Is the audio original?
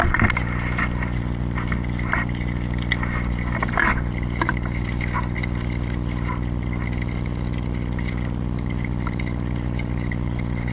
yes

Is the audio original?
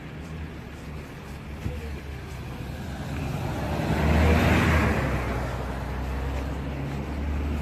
yes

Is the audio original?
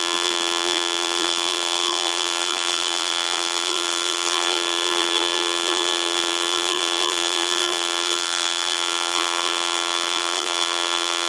no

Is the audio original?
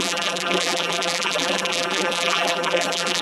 no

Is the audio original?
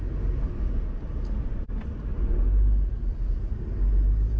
yes